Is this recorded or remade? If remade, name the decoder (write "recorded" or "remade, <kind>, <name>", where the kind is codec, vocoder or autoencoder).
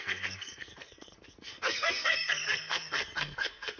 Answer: remade, codec, SNAC